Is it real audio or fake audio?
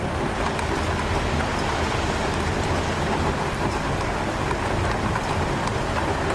real